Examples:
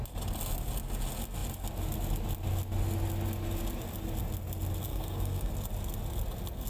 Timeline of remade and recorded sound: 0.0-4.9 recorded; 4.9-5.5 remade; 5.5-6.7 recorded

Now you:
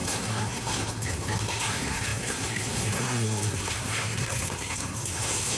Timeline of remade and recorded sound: 0.0-5.6 remade

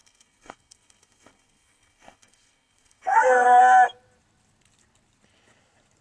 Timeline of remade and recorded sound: 0.0-3.6 remade; 3.6-6.0 recorded

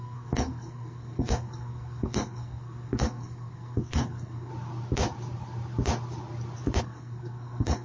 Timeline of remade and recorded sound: 0.0-4.5 remade; 4.5-6.8 recorded; 6.8-7.8 remade

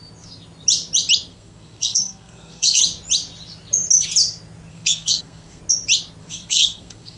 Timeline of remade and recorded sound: 0.0-1.3 recorded; 1.3-2.8 remade; 2.8-4.7 recorded; 4.7-5.6 remade; 5.6-6.2 recorded; 6.2-7.2 remade